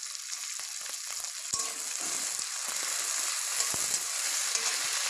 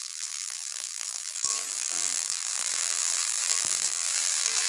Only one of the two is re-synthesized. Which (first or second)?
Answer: second